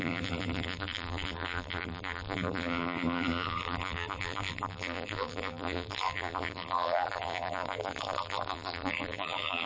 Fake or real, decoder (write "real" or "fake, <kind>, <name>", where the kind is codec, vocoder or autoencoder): fake, vocoder, BigVGAN v2